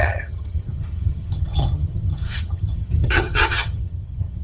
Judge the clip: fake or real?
fake